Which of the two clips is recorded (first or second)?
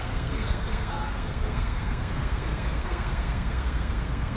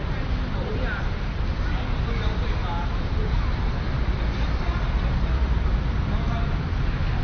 second